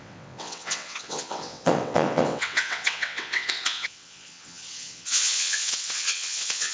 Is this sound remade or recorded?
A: remade